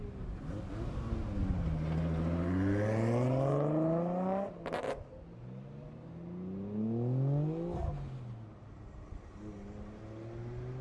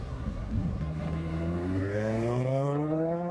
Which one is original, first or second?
first